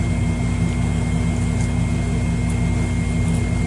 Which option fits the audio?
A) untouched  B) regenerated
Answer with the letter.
A